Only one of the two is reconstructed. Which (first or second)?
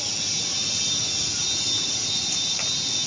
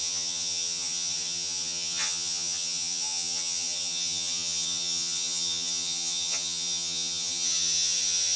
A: second